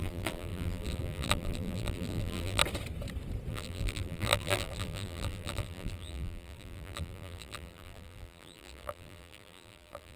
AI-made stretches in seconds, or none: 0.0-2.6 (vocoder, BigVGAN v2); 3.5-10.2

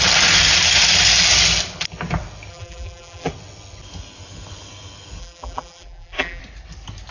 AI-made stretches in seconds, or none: 2.5-3.3 (vocoder, BigVGAN v2); 5.2-6.4